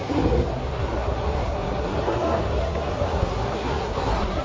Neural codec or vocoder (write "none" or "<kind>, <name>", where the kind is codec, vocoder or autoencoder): codec, SNAC